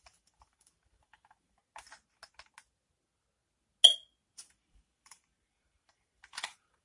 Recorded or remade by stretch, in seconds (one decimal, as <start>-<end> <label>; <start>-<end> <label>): 0.0-1.6 remade; 1.6-4.3 recorded; 4.3-6.8 remade